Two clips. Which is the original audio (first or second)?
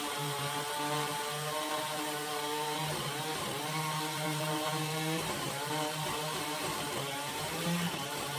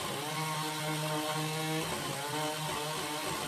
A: second